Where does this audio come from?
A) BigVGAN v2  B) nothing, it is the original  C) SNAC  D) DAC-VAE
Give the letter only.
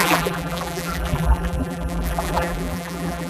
A